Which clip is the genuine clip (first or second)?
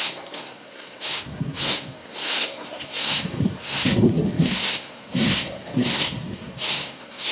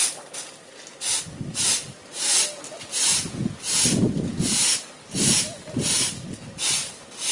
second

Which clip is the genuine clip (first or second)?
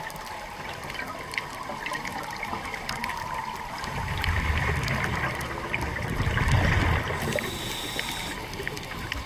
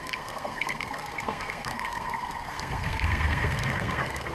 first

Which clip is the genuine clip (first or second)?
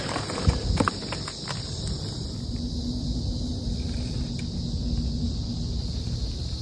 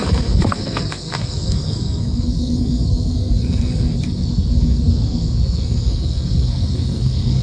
first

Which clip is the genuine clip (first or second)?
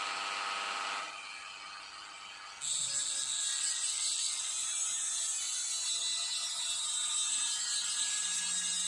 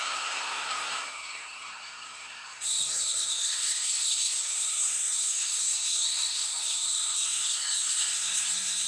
first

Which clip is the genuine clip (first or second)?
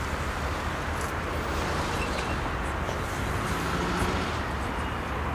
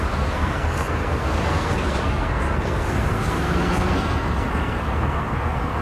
first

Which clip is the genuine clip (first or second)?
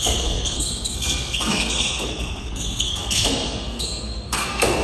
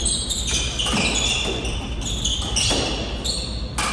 second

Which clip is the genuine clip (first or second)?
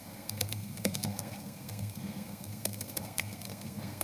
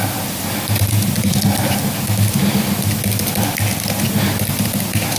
second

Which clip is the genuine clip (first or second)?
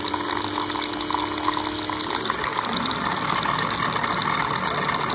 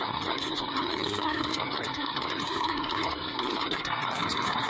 first